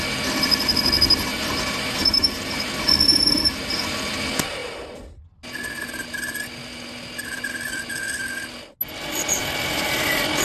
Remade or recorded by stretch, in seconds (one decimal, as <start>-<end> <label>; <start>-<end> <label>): 0.0-1.3 recorded; 1.3-2.7 remade; 2.7-3.1 recorded; 3.1-4.1 remade; 4.1-10.4 recorded